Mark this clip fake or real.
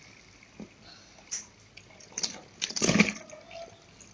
real